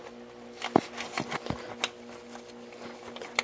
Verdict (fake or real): real